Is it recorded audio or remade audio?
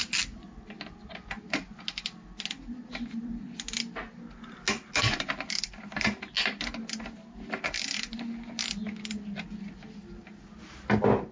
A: recorded